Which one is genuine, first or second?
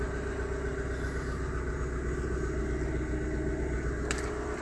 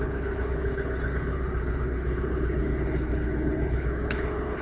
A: first